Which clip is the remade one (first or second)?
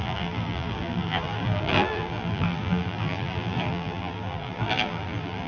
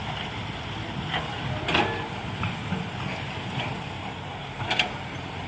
first